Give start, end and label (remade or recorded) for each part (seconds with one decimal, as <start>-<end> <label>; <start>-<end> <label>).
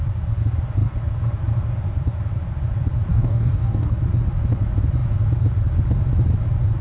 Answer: 0.0-3.1 recorded; 3.1-3.9 remade; 3.9-6.8 recorded